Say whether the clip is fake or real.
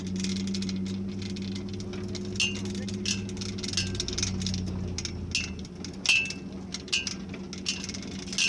real